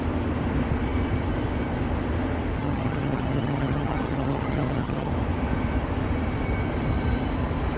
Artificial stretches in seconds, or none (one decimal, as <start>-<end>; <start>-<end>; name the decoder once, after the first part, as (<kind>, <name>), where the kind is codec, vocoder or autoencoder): 2.6-5.1 (vocoder, HiFi-GAN)